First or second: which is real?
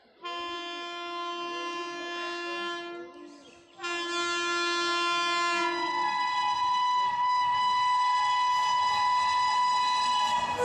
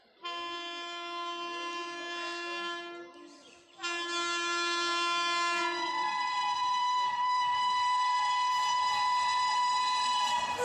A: first